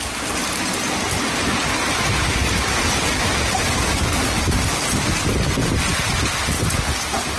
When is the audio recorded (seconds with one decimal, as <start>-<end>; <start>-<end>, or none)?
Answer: 0.0-5.6; 6.1-7.4